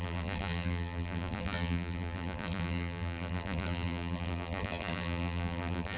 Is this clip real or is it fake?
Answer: fake